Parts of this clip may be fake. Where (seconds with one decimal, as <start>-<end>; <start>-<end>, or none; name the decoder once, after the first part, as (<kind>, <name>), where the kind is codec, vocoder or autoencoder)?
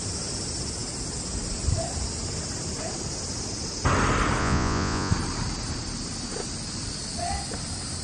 4.4-5.1 (vocoder, Vocos)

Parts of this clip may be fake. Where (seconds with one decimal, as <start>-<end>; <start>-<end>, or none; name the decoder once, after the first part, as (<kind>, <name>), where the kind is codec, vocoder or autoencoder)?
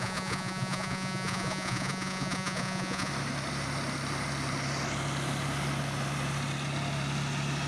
0.0-3.1 (vocoder, Vocos)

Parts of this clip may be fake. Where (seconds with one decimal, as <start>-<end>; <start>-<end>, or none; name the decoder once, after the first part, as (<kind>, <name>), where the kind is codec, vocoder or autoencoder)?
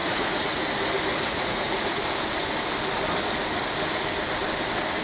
0.0-0.6 (vocoder, Vocos); 1.1-2.0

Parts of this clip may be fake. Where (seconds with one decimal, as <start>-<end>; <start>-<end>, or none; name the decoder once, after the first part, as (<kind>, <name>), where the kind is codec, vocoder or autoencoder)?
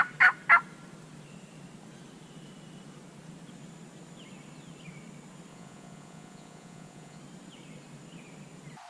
5.5-7.2 (vocoder, Vocos)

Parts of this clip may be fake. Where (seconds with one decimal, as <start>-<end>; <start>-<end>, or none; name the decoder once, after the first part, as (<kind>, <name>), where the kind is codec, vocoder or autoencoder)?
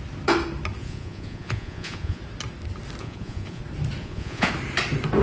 0.8-2.2 (vocoder, Vocos); 3.0-3.6; 4.0-4.5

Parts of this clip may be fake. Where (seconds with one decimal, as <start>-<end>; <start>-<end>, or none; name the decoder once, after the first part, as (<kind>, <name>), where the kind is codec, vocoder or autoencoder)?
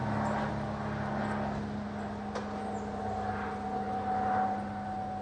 none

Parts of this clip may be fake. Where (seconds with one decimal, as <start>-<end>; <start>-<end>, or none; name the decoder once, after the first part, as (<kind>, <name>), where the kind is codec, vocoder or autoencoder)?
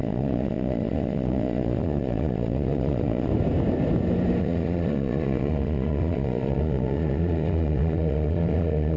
0.0-3.3 (vocoder, Vocos); 4.4-9.0